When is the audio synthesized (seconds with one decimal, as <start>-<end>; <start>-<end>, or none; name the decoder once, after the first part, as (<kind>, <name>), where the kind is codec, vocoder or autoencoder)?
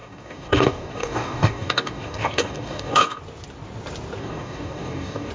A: 0.0-3.2 (codec, DAC); 4.2-5.3